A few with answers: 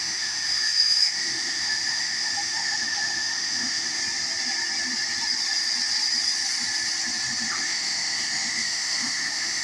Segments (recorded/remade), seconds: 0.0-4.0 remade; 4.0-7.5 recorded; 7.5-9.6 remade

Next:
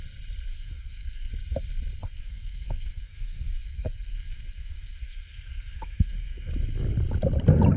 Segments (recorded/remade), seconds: 0.0-0.5 recorded; 0.5-1.3 remade; 1.3-2.0 recorded; 2.0-6.5 remade; 6.5-7.8 recorded

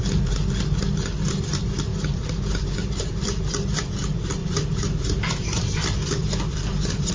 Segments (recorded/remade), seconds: 0.0-0.6 remade; 0.6-1.9 recorded; 1.9-3.8 remade; 3.8-4.4 recorded; 4.4-7.1 remade

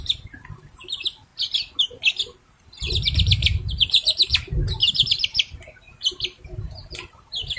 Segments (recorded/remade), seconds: 0.0-1.3 remade; 1.3-2.5 recorded; 2.5-4.3 remade; 4.3-6.6 recorded; 6.6-7.6 remade